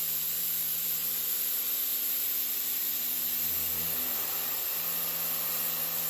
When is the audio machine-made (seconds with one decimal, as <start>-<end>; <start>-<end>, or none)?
none